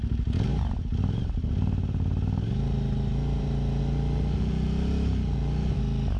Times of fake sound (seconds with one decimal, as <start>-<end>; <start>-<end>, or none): 0.5-3.8

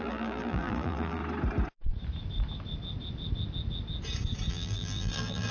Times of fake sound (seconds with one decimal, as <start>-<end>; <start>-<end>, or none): 0.0-1.2; 4.5-5.5

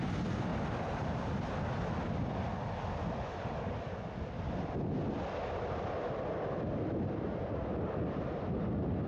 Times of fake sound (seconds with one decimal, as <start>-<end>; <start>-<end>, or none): none

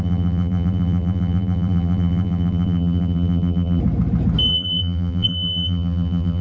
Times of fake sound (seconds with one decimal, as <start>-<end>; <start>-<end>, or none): 0.0-3.8; 4.5-6.4

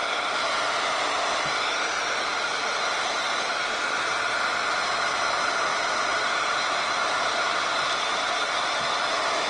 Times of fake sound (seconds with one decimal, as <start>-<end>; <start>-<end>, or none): 3.5-4.0; 5.7-7.1; 8.1-8.7